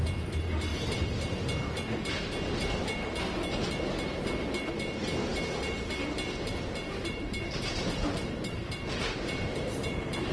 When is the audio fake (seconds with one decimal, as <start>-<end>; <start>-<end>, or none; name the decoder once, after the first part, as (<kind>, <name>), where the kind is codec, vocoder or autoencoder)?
6.8-10.3 (vocoder, BigVGAN v2)

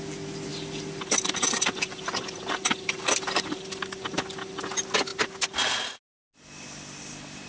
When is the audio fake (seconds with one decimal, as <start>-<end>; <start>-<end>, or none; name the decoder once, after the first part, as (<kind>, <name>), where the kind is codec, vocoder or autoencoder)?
0.5-4.6 (vocoder, BigVGAN v2)

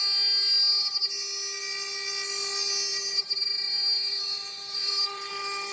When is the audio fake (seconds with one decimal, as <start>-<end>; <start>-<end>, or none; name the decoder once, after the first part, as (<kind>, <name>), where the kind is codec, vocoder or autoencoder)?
2.9-5.3 (vocoder, BigVGAN v2)

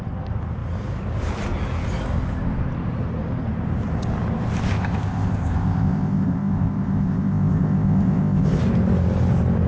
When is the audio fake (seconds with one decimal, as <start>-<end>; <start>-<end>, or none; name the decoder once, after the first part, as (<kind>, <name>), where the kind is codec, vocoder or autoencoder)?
4.7-8.6 (codec, ZipCodec)

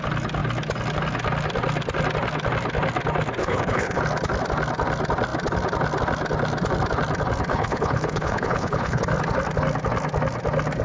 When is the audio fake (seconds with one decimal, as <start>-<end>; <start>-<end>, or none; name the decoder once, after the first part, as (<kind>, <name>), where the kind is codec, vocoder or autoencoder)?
3.4-4.0 (codec, HILCodec); 7.5-9.0

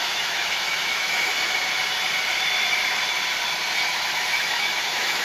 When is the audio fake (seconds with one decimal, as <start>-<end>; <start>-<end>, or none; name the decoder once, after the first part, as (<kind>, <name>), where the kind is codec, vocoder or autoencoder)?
0.0-1.3 (autoencoder, DAC-VAE); 3.9-5.2